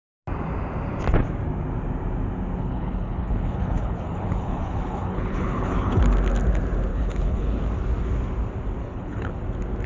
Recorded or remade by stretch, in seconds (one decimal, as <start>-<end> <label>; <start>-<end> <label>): 0.0-2.6 recorded; 2.6-6.0 remade; 6.0-6.9 recorded; 6.9-7.6 remade; 7.6-8.8 recorded; 8.8-9.4 remade; 9.4-9.9 recorded

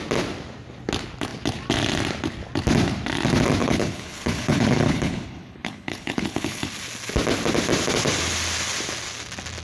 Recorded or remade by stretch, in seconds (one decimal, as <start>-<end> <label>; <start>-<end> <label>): 0.0-3.6 recorded; 3.6-6.7 remade; 6.7-9.6 recorded

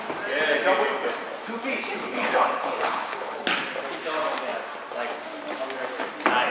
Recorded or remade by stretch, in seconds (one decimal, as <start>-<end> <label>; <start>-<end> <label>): 0.0-2.0 recorded; 2.0-3.4 remade; 3.4-6.5 recorded